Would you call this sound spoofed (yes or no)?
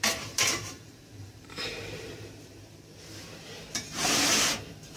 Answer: yes